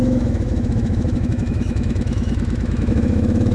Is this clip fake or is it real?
fake